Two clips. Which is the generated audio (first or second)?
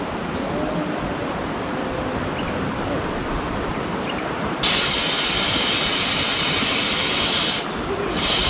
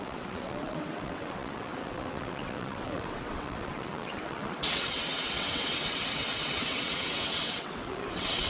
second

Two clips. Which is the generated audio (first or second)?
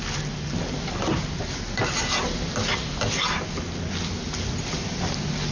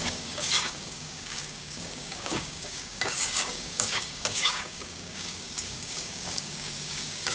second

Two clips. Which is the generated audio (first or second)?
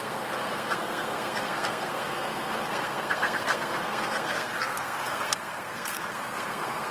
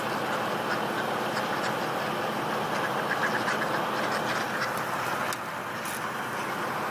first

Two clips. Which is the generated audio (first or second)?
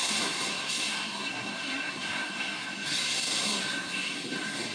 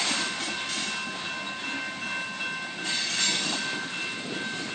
first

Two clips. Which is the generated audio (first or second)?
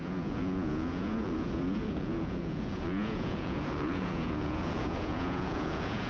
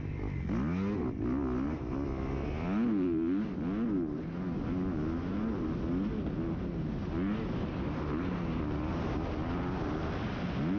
first